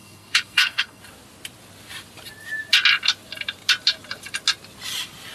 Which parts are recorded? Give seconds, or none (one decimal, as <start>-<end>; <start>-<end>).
1.0-5.3